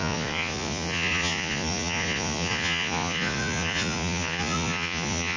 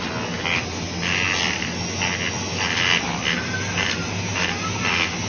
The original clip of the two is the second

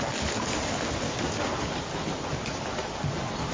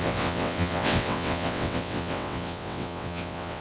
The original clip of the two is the first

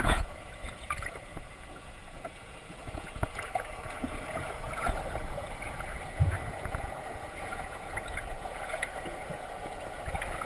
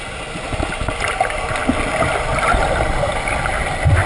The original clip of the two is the second